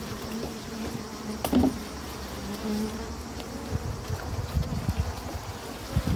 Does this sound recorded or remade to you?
recorded